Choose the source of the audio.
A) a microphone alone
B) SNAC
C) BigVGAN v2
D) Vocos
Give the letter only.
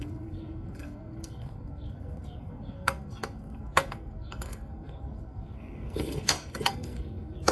B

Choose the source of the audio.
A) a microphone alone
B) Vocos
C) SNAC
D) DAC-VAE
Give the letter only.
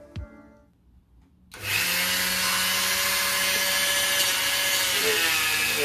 A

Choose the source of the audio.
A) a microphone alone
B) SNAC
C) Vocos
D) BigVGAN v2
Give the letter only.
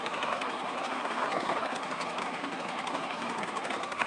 B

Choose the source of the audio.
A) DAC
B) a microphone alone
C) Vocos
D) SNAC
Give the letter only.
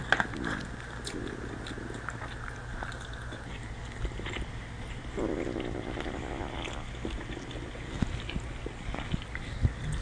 B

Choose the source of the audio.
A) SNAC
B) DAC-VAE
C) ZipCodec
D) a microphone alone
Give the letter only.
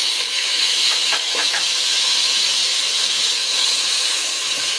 B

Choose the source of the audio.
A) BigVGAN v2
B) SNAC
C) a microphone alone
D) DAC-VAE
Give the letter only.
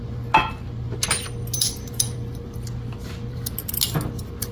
C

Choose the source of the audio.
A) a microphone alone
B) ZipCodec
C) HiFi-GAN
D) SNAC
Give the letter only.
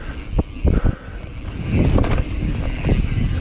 A